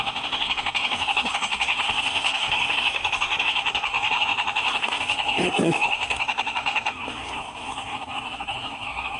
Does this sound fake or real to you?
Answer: fake